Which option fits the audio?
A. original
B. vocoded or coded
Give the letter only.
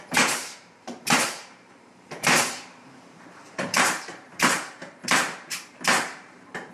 B